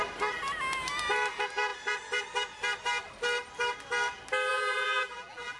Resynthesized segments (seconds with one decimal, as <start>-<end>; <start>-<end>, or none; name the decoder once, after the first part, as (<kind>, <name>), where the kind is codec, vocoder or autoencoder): 4.5-5.6 (vocoder, BigVGAN v2)